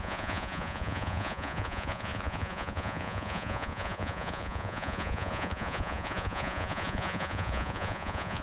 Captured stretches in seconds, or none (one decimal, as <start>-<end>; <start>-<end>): none